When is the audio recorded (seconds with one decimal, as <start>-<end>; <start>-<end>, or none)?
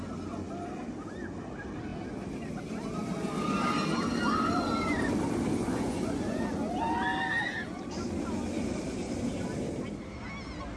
0.0-5.6; 6.4-10.8